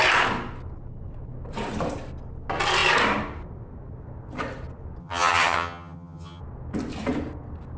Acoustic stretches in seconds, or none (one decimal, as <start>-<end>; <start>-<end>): 0.0-5.0; 6.4-7.8